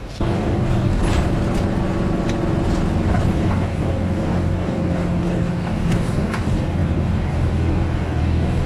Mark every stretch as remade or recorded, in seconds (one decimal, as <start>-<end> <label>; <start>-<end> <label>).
0.0-1.0 remade; 1.0-3.3 recorded; 3.3-8.7 remade